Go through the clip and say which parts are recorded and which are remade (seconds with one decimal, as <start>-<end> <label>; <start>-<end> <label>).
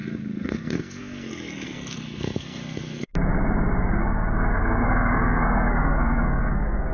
0.0-3.1 remade; 3.1-4.0 recorded; 4.0-6.9 remade